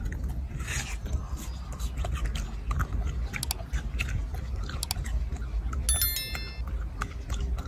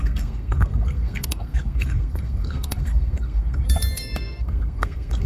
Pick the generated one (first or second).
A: second